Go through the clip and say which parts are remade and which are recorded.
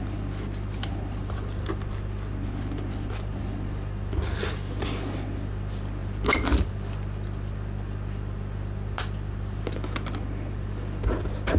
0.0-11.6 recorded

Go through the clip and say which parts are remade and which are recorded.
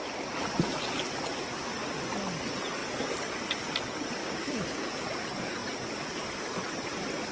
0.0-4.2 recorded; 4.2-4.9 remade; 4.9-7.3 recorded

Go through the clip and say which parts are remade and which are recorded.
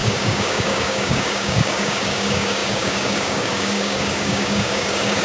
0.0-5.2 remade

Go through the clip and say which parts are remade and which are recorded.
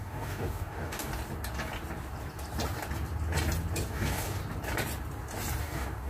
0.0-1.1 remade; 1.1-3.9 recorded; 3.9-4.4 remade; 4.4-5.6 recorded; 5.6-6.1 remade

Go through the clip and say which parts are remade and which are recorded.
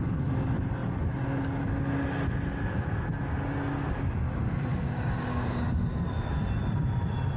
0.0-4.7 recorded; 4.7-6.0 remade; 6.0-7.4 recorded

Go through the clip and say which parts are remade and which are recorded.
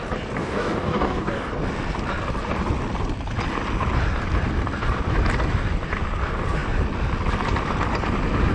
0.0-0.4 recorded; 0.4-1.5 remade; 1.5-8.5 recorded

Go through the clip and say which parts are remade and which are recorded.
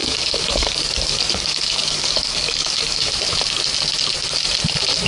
0.0-3.1 remade; 3.1-5.1 recorded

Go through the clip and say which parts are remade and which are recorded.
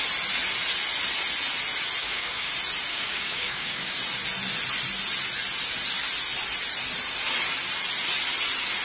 0.0-2.0 recorded; 2.0-2.5 remade; 2.5-2.9 recorded; 2.9-3.9 remade; 3.9-8.8 recorded